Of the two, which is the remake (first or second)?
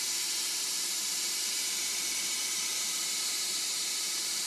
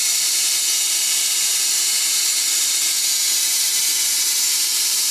first